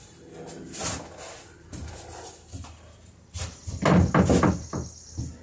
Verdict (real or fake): real